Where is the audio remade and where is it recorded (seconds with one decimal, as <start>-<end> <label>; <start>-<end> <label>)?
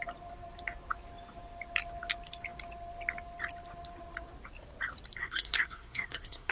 0.0-5.2 recorded; 5.2-6.5 remade